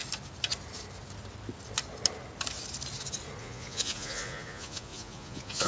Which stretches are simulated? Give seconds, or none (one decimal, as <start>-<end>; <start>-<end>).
3.4-5.7